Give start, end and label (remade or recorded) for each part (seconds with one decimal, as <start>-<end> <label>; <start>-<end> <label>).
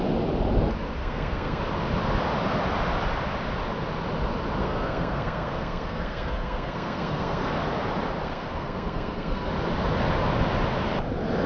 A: 0.0-1.0 recorded; 1.0-1.6 remade; 1.6-4.6 recorded; 4.6-7.6 remade; 7.6-8.2 recorded; 8.2-9.5 remade; 9.5-11.5 recorded